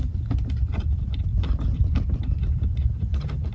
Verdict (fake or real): fake